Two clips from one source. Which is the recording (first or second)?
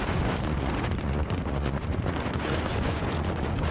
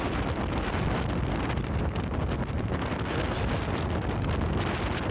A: second